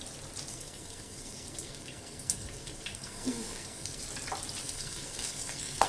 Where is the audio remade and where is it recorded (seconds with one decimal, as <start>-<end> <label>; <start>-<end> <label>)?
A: 0.0-0.5 recorded; 0.5-4.0 remade; 4.0-4.6 recorded; 4.6-5.9 remade